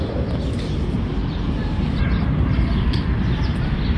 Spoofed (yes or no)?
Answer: no